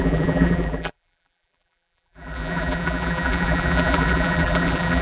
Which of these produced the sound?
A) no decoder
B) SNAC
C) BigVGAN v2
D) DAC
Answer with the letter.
C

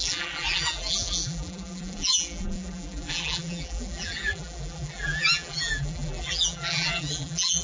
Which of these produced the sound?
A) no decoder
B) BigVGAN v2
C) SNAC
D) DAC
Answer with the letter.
B